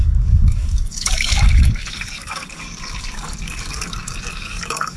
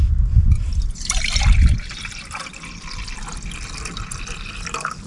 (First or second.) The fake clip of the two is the first